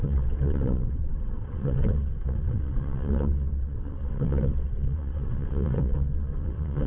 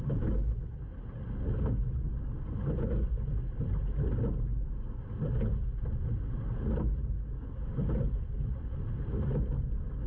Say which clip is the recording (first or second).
second